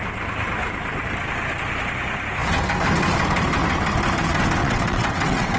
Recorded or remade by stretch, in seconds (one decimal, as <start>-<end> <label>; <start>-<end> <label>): 0.0-4.6 recorded; 4.6-5.6 remade